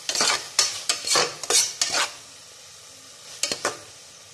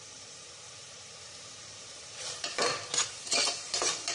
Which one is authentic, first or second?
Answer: first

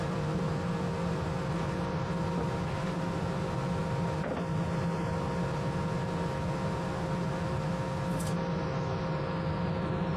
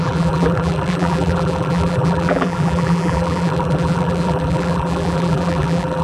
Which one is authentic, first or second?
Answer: first